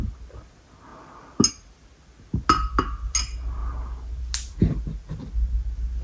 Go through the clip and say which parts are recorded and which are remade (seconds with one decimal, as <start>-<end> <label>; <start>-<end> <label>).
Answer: 0.0-6.0 recorded